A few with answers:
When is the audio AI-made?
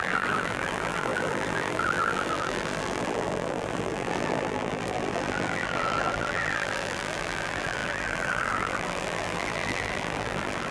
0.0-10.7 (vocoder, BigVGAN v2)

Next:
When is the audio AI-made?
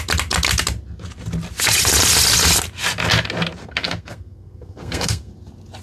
3.6-5.3 (codec, SNAC)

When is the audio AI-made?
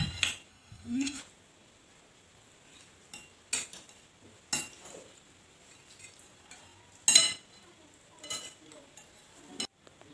0.5-1.2 (codec, SNAC)